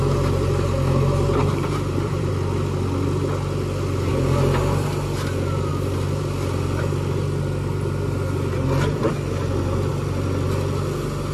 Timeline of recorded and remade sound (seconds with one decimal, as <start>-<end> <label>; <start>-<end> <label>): 0.0-1.4 recorded; 1.4-2.3 remade; 2.3-11.3 recorded